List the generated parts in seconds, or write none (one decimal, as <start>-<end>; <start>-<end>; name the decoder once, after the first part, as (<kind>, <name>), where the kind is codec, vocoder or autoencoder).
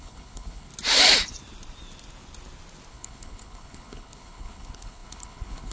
0.0-0.7 (codec, HILCodec); 2.9-5.7